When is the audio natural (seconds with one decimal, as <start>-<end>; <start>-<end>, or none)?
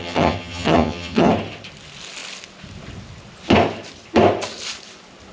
1.3-5.3